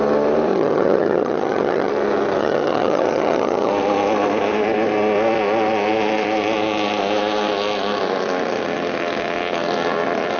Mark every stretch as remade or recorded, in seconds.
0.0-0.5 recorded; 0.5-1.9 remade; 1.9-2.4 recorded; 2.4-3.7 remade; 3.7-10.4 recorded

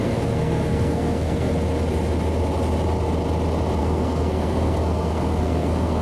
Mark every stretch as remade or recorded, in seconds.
0.0-1.5 remade; 1.5-3.8 recorded; 3.8-6.0 remade

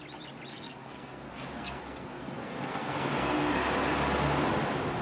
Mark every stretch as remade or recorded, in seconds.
0.0-0.5 recorded; 0.5-3.5 remade; 3.5-5.0 recorded